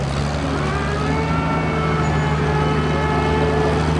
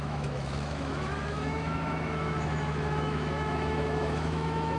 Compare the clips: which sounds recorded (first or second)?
first